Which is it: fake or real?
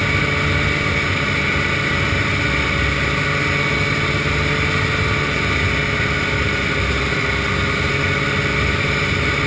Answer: real